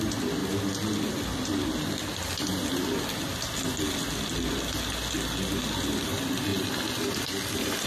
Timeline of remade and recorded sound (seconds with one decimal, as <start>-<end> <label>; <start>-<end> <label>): 0.0-7.9 recorded